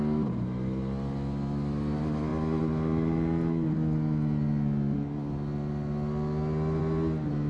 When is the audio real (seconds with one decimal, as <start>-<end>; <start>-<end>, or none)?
0.0-7.5